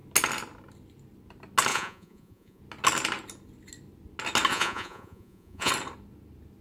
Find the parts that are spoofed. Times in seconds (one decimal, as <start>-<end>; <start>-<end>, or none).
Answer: 1.7-2.6; 4.5-5.7